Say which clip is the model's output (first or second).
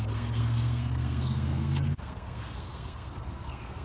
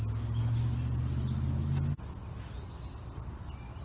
first